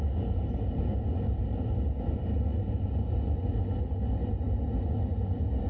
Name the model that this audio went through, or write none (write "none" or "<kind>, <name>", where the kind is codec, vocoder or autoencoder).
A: none